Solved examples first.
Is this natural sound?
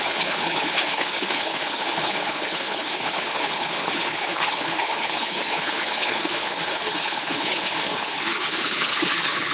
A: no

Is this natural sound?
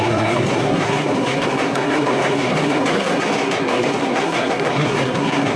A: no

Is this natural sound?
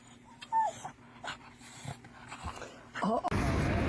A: yes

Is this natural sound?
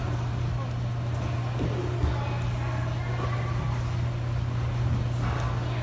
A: yes